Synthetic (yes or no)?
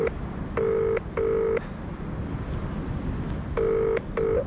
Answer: no